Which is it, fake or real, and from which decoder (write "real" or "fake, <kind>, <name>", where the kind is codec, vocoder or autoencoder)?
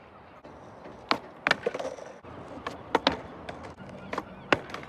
real